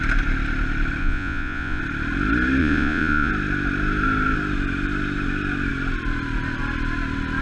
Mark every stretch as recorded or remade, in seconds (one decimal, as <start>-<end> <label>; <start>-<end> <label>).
0.0-1.0 recorded; 1.0-1.8 remade; 1.8-2.6 recorded; 2.6-3.3 remade; 3.3-7.4 recorded